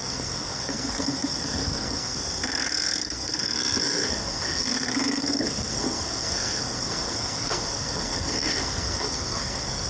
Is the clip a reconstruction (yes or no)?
yes